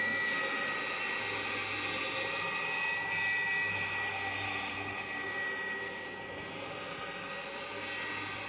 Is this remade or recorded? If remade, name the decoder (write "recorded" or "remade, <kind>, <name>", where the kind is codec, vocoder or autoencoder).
recorded